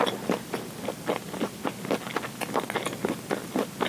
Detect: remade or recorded recorded